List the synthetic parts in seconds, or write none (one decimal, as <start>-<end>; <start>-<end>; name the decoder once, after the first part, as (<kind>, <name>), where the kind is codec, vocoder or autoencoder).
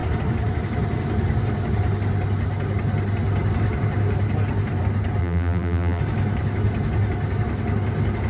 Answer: 5.2-6.0 (vocoder, BigVGAN v2)